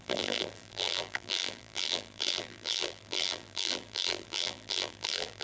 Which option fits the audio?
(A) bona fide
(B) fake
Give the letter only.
B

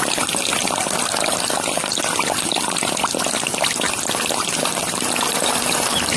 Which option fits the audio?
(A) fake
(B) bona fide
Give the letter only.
B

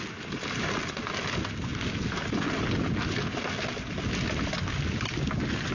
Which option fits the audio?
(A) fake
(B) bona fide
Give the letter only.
B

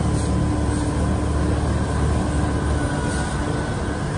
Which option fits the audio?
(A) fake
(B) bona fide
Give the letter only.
B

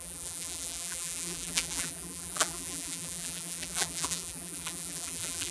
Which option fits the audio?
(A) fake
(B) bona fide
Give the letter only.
A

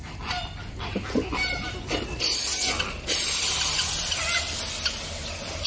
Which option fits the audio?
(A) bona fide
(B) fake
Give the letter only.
A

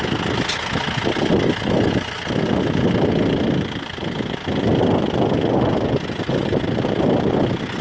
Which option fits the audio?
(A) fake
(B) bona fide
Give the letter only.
B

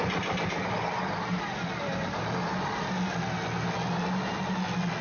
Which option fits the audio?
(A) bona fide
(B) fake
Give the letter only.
A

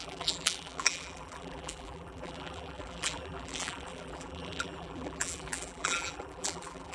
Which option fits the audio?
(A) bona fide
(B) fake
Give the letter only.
B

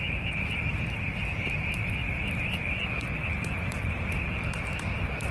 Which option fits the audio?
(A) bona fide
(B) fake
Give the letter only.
B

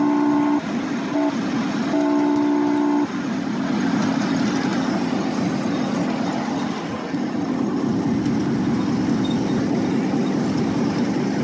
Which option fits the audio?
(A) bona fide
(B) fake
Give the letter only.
A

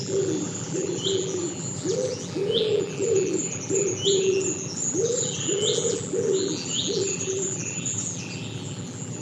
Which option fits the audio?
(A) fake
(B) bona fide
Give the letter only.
A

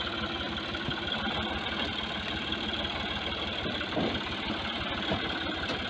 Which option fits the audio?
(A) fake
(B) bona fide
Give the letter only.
B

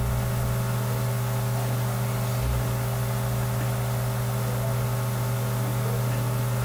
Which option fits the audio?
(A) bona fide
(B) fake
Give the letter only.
A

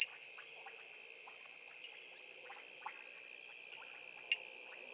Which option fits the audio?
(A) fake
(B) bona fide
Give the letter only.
B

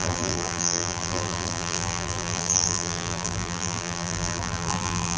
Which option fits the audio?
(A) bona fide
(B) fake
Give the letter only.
B